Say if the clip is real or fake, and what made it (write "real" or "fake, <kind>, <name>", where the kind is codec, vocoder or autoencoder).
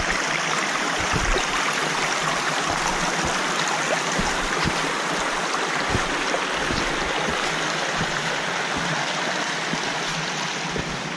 real